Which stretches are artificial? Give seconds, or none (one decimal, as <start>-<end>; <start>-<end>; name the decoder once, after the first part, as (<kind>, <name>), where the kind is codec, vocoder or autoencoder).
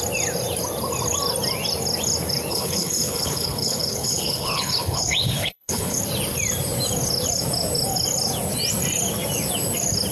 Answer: 2.5-6.0 (codec, HILCodec)